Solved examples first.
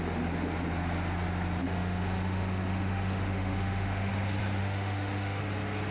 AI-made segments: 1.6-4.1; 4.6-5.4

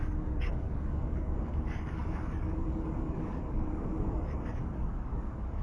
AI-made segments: 0.0-5.6

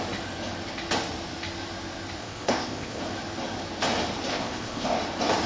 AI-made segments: 2.2-3.0; 4.3-5.0